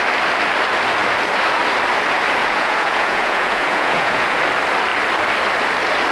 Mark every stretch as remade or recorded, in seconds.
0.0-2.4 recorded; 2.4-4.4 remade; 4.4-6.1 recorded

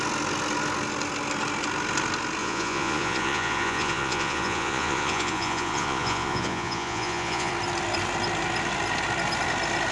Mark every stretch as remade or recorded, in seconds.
0.0-2.4 recorded; 2.4-7.5 remade; 7.5-9.9 recorded

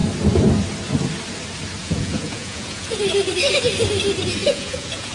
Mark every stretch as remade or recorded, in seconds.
0.0-1.8 recorded; 1.8-3.0 remade; 3.0-4.4 recorded; 4.4-5.1 remade

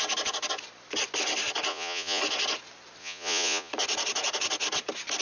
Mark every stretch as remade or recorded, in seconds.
0.0-1.7 recorded; 1.7-2.2 remade; 2.2-3.0 recorded; 3.0-3.7 remade; 3.7-5.2 recorded